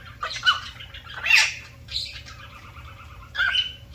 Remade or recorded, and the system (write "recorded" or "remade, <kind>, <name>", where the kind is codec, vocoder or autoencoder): recorded